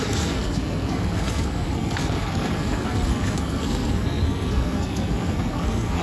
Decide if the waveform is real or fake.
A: fake